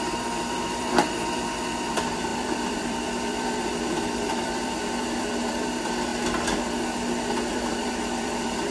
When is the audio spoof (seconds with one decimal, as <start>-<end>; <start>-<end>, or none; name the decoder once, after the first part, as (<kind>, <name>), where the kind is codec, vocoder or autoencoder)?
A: 0.0-6.1 (vocoder, BigVGAN v2); 7.5-8.7